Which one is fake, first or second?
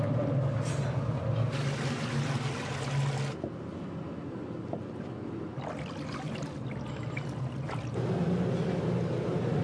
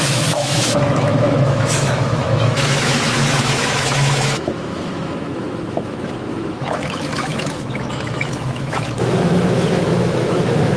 second